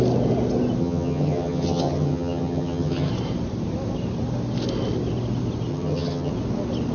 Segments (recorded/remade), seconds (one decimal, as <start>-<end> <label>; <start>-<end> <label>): 0.0-0.8 recorded; 0.8-3.1 remade; 3.1-5.7 recorded; 5.7-6.3 remade; 6.3-6.9 recorded